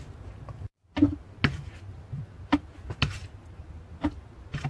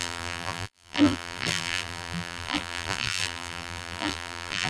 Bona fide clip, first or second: first